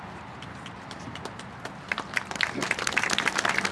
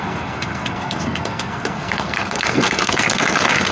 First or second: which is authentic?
first